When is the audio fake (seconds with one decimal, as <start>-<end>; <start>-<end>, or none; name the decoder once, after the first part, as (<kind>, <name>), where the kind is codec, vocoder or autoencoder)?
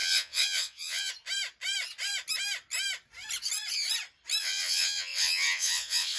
0.0-1.1 (vocoder, WaveNeXt); 4.4-6.2